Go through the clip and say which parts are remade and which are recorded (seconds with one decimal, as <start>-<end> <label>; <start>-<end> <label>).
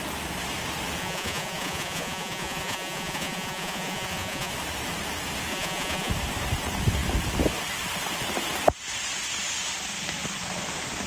0.0-1.0 recorded; 1.0-4.5 remade; 4.5-5.5 recorded; 5.5-6.1 remade; 6.1-11.1 recorded